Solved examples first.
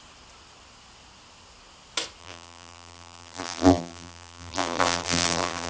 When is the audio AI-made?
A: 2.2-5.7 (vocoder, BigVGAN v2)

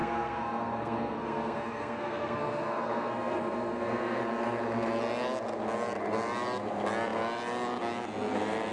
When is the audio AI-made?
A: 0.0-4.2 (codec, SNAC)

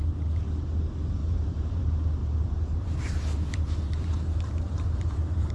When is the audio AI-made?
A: 1.2-1.8 (vocoder, BigVGAN v2); 2.2-5.5

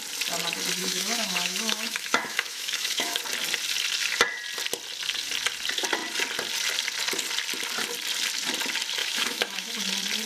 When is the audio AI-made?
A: 0.8-3.2 (autoencoder, DAC-VAE); 9.0-9.7

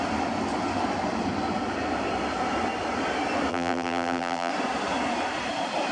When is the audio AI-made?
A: 3.5-4.5 (vocoder, BigVGAN v2)

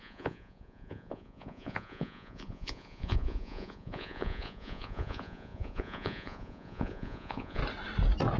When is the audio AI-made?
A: 0.0-7.6 (vocoder, Vocos)

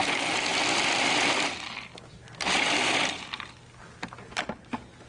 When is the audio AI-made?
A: none

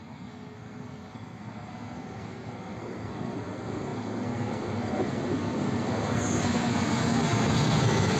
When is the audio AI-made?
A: 0.0-8.2 (codec, SNAC)